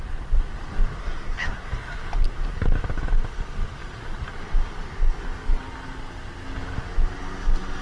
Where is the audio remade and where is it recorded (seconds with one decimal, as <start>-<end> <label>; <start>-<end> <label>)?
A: 0.0-1.0 recorded; 1.0-1.7 remade; 1.7-7.8 recorded